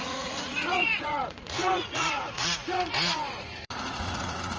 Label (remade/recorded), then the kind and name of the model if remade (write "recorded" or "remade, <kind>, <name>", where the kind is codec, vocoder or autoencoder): remade, vocoder, Vocos